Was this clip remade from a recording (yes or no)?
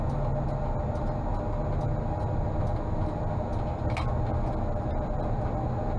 no